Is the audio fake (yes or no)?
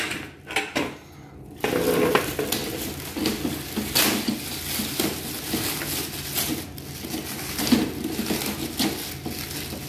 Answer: no